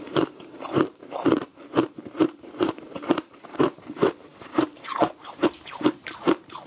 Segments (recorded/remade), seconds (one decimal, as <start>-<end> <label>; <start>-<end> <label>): 0.0-6.7 remade